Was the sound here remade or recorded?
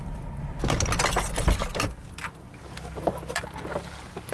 recorded